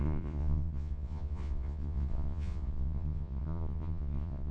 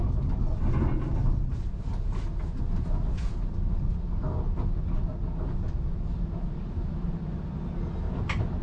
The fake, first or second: first